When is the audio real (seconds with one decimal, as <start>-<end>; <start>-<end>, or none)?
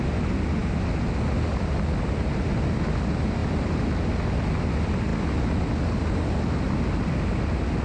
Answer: 0.0-7.8